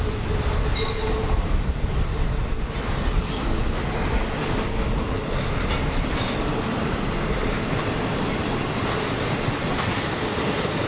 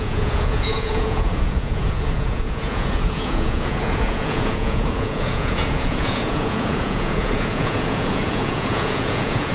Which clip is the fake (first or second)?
second